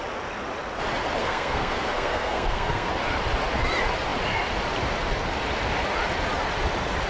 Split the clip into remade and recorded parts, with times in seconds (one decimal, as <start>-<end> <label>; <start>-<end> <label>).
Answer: 0.0-1.2 recorded; 1.2-2.9 remade; 2.9-7.1 recorded